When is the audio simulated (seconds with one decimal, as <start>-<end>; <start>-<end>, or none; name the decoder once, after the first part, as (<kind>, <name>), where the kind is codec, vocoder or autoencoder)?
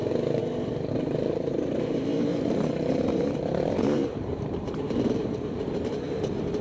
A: 0.0-0.4 (vocoder, BigVGAN v2); 0.9-6.6